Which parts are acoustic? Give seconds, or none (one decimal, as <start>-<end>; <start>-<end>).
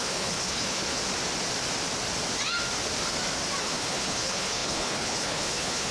1.0-3.6